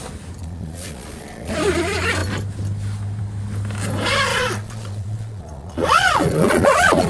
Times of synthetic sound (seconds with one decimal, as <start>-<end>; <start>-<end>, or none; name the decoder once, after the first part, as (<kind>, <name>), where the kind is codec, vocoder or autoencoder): 0.4-1.5 (vocoder, Vocos); 4.3-7.1